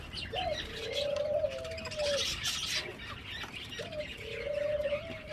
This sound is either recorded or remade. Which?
remade